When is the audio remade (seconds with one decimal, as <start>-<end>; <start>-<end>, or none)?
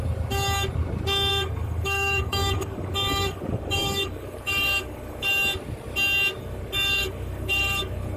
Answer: 1.3-5.3; 6.4-8.2